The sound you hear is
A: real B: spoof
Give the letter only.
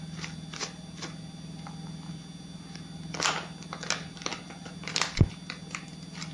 A